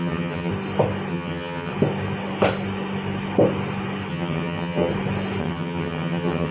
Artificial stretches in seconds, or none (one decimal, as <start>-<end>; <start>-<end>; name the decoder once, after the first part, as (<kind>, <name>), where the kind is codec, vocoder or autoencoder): 0.0-0.5 (vocoder, HiFi-GAN); 1.1-1.7; 4.1-4.9; 5.4-6.5